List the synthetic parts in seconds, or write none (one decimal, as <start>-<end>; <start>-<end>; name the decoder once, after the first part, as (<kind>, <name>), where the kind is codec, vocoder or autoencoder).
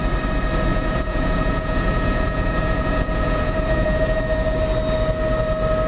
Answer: 0.7-4.2 (vocoder, Vocos)